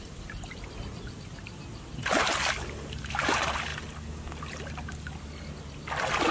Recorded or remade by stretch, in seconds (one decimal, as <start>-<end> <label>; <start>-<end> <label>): 0.0-6.3 recorded